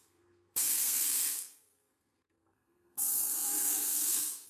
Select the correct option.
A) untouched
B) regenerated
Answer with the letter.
B